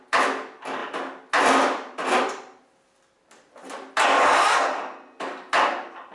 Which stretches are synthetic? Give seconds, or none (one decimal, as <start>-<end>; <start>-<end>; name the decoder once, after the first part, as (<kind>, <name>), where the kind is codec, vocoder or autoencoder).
none